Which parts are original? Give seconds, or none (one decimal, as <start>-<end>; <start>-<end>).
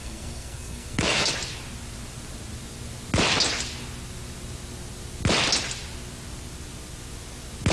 1.3-7.7